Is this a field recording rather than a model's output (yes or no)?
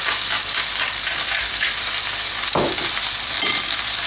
no